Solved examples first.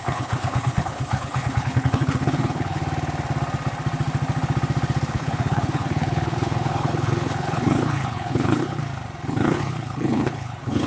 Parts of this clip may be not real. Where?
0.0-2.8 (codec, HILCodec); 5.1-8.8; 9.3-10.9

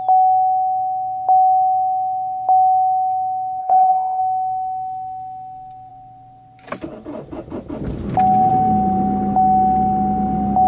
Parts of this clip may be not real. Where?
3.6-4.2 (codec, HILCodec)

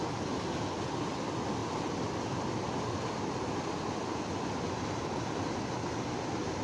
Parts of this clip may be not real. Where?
none

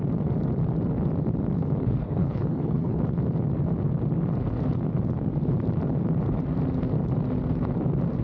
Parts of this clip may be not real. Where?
2.0-3.0 (codec, HILCodec)